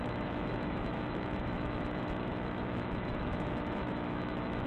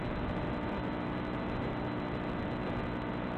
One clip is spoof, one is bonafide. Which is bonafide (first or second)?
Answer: second